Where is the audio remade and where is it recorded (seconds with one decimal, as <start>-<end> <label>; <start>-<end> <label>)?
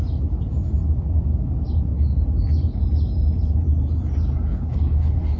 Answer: 0.0-4.5 recorded; 4.5-5.4 remade